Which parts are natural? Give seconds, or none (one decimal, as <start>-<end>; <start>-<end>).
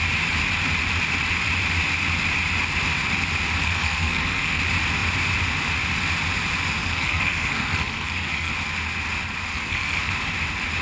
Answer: 0.0-3.6; 4.6-6.8; 8.5-9.5; 10.1-10.8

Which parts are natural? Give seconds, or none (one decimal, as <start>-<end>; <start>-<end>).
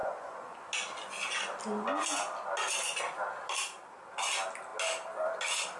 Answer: 0.7-5.8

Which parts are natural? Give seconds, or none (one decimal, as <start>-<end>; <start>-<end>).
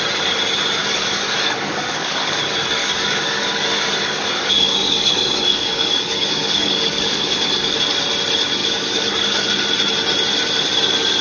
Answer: 0.0-0.8; 2.4-2.8; 7.8-8.6; 9.5-11.2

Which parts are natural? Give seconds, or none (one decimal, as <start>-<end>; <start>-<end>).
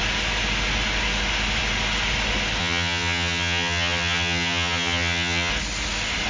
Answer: 0.0-2.6; 5.5-6.3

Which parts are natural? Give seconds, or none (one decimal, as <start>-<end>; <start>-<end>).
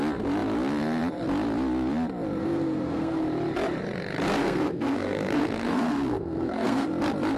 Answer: 0.0-2.4; 3.2-4.4; 6.9-7.4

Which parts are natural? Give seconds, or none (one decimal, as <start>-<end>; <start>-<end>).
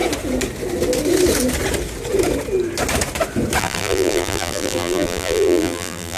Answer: 0.0-3.6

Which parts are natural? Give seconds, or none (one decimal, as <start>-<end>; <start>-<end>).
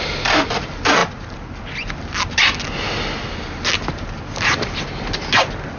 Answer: 0.0-5.8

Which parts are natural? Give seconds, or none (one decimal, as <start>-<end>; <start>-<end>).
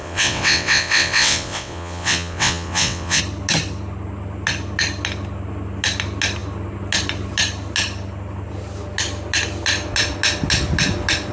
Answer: 3.2-11.3